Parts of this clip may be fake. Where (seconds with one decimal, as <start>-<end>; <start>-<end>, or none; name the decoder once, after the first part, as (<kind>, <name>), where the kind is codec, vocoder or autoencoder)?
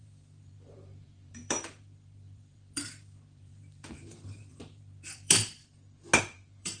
0.0-5.6 (vocoder, BigVGAN v2); 6.2-6.8